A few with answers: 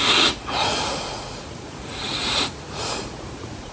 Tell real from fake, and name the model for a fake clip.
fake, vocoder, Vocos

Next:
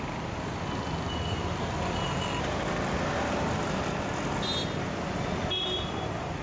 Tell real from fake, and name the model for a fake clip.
real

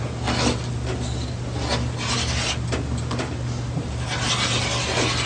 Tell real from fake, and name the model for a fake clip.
real